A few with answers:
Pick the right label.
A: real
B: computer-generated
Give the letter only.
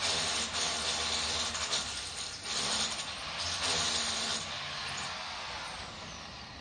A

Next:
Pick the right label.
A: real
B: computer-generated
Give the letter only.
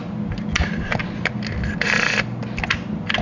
A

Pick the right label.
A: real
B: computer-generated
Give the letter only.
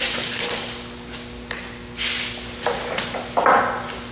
A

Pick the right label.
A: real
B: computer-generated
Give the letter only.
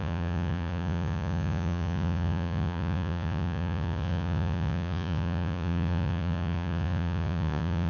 B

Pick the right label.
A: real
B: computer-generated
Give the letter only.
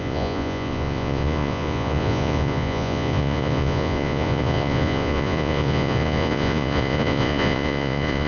B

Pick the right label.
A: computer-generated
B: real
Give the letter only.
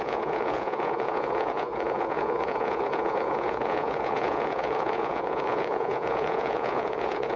A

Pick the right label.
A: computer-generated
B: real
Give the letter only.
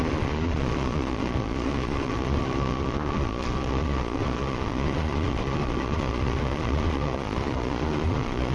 A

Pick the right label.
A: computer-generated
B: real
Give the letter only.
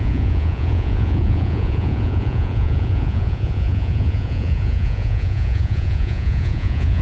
A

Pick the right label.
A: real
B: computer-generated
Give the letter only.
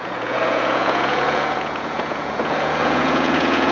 B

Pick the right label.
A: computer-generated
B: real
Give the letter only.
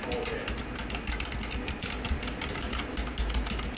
B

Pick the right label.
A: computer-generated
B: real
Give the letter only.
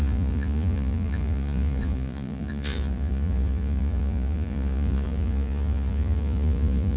A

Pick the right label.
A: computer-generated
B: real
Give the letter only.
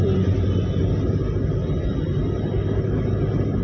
B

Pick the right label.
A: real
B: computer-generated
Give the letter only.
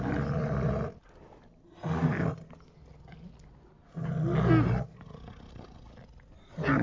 A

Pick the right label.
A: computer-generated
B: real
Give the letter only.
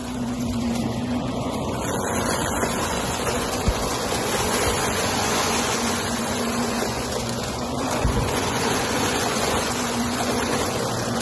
A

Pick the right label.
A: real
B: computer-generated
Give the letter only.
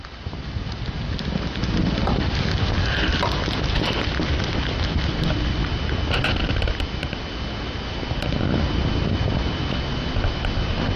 A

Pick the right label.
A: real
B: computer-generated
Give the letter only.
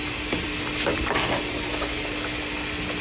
A